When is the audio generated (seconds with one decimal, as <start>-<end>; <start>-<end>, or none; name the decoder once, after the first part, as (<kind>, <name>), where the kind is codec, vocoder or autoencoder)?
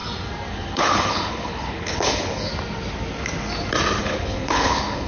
0.5-2.5 (codec, HILCodec); 4.0-5.1